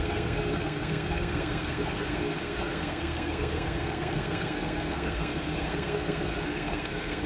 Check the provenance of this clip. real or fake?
fake